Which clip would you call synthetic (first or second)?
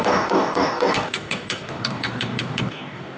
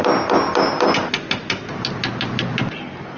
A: first